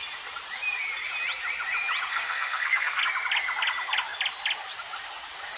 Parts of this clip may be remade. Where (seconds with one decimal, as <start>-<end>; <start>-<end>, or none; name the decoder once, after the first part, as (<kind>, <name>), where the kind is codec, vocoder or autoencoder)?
2.1-3.0 (codec, SNAC)